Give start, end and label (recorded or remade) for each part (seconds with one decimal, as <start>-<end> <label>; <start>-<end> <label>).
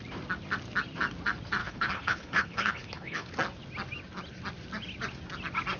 0.0-1.6 recorded; 1.6-3.3 remade; 3.3-5.8 recorded